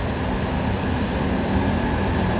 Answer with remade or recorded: recorded